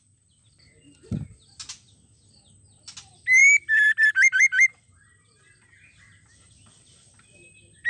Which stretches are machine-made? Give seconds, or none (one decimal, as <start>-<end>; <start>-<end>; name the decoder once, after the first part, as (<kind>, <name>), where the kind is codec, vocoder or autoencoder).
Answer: 3.4-6.8 (vocoder, BigVGAN v2)